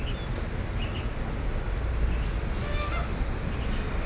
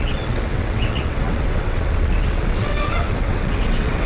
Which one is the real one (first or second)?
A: first